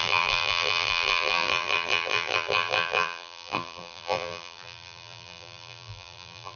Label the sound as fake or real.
fake